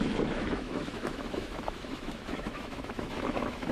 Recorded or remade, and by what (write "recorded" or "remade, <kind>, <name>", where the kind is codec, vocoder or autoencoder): remade, autoencoder, DAC-VAE